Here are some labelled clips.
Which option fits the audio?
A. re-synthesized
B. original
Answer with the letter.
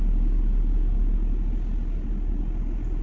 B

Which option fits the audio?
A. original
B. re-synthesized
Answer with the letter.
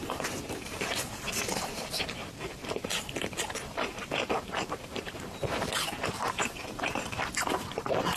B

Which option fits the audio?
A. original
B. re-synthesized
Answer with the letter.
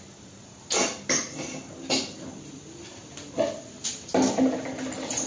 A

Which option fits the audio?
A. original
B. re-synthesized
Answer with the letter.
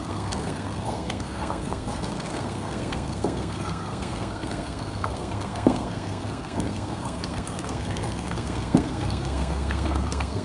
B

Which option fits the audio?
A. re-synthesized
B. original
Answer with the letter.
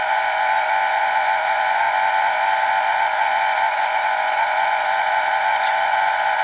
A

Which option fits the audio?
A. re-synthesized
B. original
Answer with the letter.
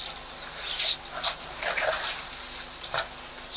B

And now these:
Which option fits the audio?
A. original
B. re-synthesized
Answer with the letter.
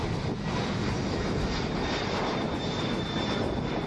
A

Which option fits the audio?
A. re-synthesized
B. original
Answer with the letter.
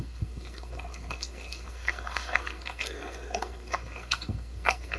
A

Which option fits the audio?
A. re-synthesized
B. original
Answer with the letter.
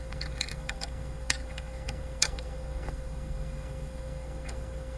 A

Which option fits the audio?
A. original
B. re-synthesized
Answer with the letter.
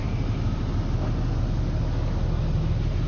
A